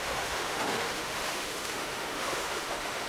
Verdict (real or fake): fake